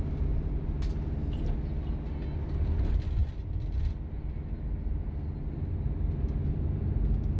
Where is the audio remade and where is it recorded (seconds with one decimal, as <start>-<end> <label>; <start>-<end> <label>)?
0.0-7.4 recorded